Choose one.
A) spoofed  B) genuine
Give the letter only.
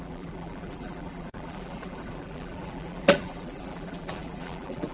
A